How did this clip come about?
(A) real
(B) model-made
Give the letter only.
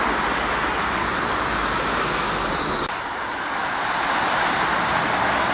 A